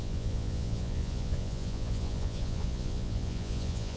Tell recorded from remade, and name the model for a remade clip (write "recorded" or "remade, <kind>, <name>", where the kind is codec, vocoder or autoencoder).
remade, vocoder, Vocos